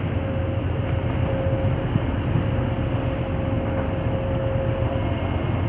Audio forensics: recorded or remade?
recorded